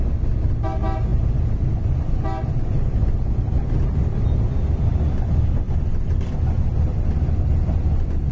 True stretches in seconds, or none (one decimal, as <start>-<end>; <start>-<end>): 0.0-6.9; 7.6-8.3